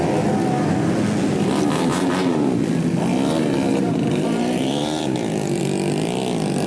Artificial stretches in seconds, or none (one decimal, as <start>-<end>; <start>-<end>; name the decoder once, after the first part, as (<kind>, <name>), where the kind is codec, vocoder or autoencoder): 1.9-2.4 (vocoder, BigVGAN v2); 3.7-5.6